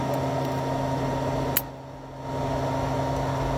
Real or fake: real